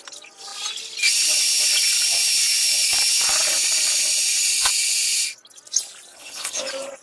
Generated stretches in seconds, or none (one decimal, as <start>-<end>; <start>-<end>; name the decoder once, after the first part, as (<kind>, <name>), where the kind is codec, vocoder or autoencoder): 6.1-6.6 (codec, HILCodec)